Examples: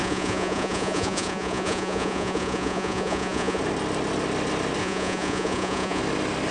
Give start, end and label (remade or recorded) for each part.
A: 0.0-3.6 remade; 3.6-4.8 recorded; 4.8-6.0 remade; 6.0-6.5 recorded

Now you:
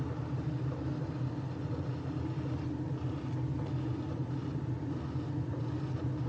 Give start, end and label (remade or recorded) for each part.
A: 0.0-6.3 recorded

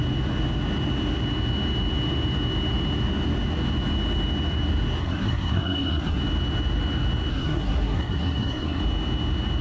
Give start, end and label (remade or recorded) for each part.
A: 0.0-5.0 recorded; 5.0-6.2 remade; 6.2-7.3 recorded; 7.3-8.8 remade; 8.8-9.6 recorded